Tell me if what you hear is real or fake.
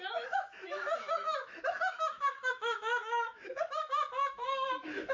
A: fake